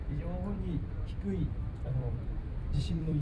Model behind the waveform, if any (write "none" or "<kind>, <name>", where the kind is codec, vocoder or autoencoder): vocoder, BigVGAN v2